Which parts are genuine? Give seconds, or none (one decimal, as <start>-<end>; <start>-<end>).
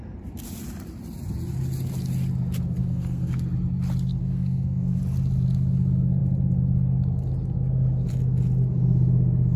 0.0-2.8; 3.4-4.2; 5.0-9.6